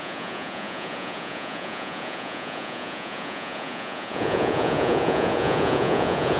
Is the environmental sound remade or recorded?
remade